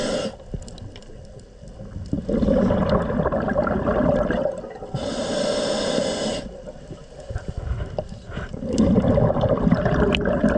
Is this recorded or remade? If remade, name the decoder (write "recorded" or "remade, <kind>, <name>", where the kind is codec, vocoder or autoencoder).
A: recorded